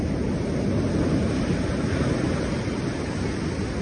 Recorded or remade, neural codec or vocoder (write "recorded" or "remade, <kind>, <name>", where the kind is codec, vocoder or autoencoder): recorded